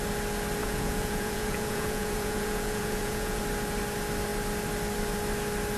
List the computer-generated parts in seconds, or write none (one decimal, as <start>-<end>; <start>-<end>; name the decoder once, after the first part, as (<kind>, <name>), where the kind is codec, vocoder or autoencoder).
0.6-3.4 (vocoder, Vocos)